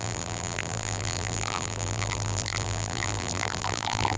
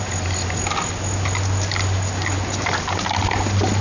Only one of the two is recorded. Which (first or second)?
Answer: second